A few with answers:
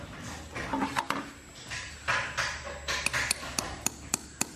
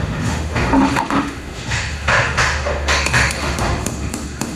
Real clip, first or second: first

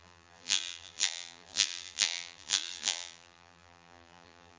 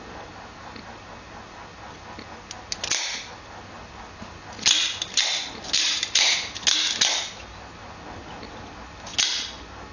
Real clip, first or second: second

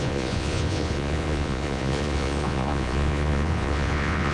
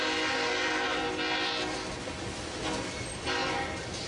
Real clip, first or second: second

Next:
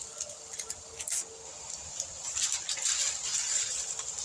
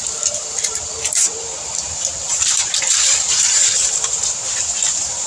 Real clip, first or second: first